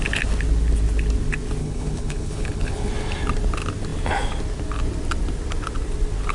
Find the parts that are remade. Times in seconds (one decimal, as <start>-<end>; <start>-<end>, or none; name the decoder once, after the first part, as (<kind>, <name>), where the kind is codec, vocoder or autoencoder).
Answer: 1.6-2.9 (codec, HILCodec)